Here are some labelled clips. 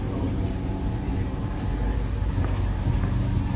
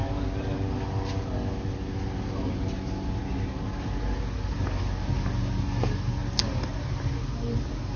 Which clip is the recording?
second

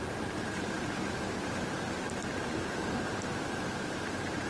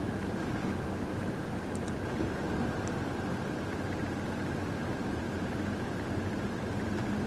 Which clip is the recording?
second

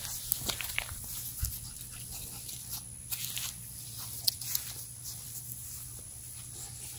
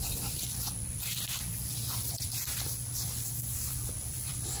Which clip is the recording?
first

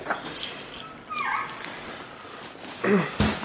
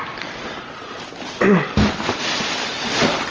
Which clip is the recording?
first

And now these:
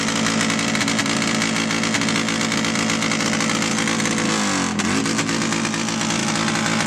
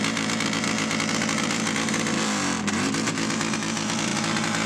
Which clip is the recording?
first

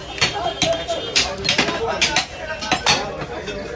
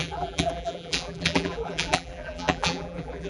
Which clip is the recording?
first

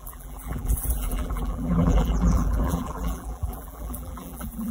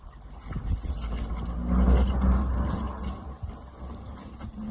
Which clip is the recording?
second